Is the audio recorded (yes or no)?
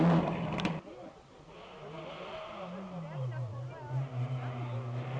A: yes